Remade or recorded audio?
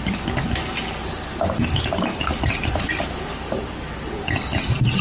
recorded